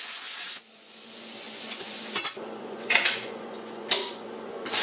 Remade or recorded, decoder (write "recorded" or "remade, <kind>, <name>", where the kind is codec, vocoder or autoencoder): remade, vocoder, Vocos